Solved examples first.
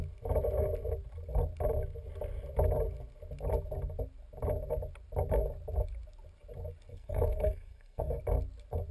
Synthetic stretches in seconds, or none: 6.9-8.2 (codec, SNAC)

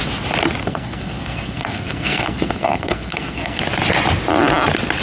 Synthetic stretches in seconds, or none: 0.6-3.6 (codec, SNAC)